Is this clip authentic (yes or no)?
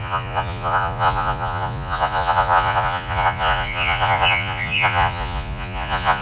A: no